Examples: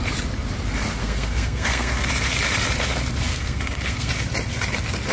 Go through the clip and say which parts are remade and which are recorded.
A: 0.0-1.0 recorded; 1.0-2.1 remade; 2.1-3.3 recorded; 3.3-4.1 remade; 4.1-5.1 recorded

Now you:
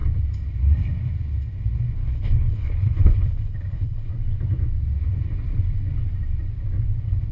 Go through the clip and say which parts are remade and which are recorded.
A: 0.0-2.0 recorded; 2.0-4.1 remade; 4.1-7.3 recorded

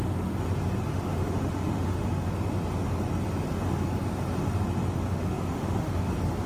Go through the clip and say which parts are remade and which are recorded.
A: 0.0-0.9 recorded; 0.9-2.0 remade; 2.0-5.1 recorded; 5.1-6.1 remade; 6.1-6.5 recorded

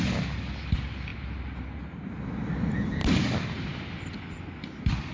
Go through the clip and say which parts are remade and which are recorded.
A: 0.0-5.1 recorded

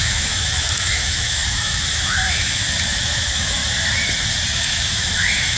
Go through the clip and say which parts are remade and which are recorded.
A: 0.0-3.6 remade; 3.6-4.6 recorded; 4.6-5.6 remade

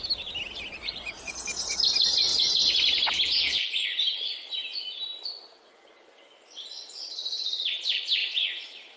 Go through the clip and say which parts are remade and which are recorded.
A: 0.0-0.8 recorded; 0.8-1.3 remade; 1.3-8.2 recorded; 8.2-9.0 remade